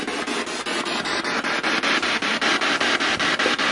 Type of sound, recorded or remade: recorded